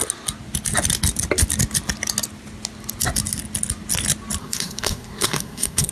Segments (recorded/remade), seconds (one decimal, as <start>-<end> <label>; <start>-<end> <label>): 0.0-4.4 recorded; 4.4-5.9 remade